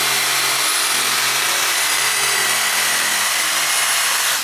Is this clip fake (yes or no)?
no